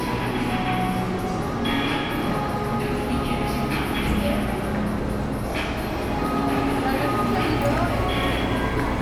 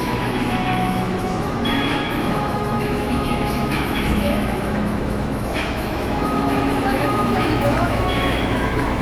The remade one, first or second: second